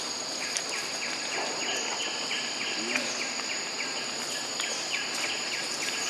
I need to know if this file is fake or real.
real